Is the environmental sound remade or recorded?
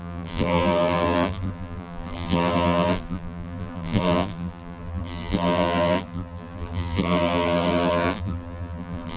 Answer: remade